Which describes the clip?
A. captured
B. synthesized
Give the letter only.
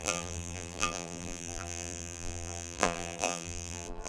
B